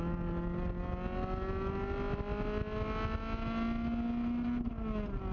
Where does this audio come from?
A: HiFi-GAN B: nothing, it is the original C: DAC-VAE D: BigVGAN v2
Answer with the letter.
B